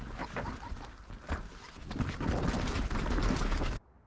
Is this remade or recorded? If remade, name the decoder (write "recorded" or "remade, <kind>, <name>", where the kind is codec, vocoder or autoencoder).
recorded